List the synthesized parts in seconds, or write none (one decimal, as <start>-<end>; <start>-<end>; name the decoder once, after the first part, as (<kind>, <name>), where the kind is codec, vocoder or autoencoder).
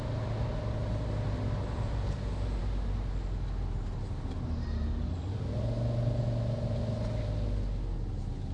none